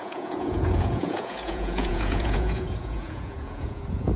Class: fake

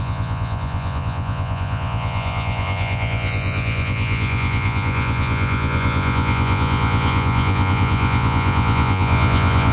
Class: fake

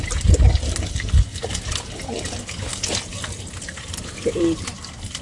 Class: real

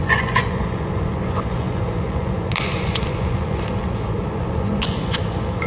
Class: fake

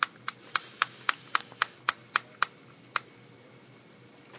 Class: real